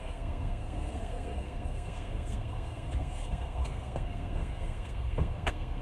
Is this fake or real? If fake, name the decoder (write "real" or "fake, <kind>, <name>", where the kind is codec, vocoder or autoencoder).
fake, codec, SNAC